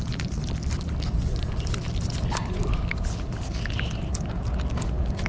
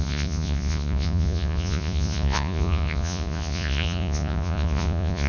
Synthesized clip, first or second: second